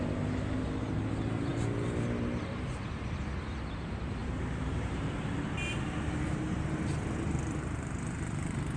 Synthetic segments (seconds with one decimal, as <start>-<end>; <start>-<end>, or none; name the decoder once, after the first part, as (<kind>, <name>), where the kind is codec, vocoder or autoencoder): 4.2-8.8 (vocoder, BigVGAN v2)